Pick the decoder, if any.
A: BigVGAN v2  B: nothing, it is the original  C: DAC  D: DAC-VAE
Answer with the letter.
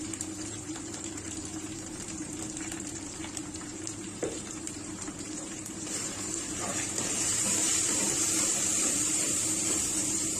A